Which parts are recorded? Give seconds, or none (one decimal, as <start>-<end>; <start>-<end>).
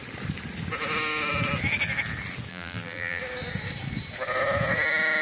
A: 0.0-2.5; 3.2-5.2